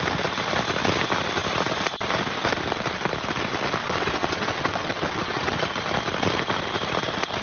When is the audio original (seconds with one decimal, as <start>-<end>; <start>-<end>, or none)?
0.0-3.8; 5.6-7.4